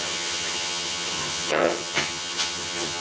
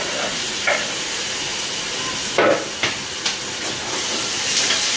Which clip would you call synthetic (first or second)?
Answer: first